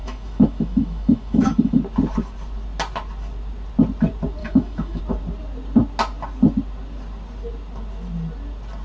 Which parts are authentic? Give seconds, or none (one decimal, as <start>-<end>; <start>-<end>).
1.8-4.4; 5.0-8.8

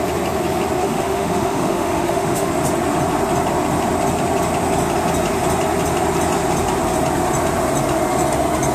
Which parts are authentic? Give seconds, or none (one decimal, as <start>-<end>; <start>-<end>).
0.0-0.8; 2.5-8.7